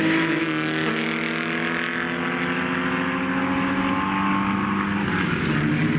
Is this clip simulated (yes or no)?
no